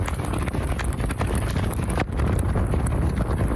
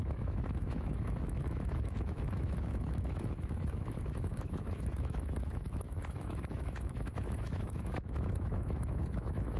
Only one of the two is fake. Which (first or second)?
second